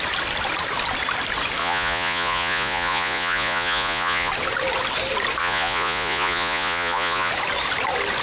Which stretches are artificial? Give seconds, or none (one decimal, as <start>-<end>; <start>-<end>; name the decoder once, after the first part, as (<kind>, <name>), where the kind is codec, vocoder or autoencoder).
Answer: 1.6-4.3 (vocoder, Vocos); 5.4-7.3